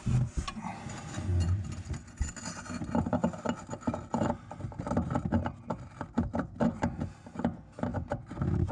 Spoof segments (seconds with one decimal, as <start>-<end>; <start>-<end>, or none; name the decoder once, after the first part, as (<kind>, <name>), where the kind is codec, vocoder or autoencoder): none